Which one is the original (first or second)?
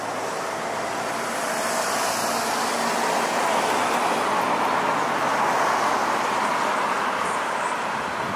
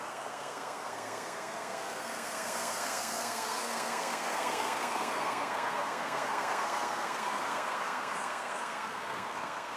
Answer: first